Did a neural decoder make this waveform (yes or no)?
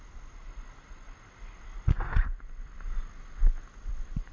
yes